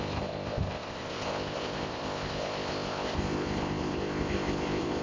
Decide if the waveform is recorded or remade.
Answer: remade